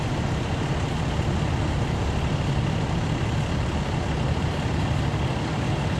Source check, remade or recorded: recorded